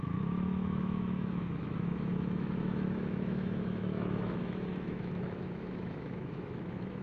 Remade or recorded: remade